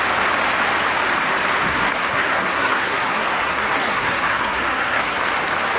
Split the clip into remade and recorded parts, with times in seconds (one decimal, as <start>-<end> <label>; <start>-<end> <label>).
0.0-1.7 recorded; 1.7-5.2 remade; 5.2-5.8 recorded